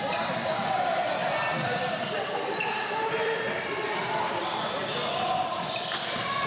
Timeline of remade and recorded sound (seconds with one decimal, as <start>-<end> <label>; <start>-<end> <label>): 0.0-1.2 recorded; 1.2-4.8 remade; 4.8-6.5 recorded